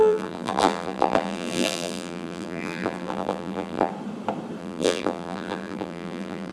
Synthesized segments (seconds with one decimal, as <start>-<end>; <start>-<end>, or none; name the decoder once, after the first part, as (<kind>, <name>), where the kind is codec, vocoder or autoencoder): 0.0-3.9 (vocoder, BigVGAN v2); 4.6-6.5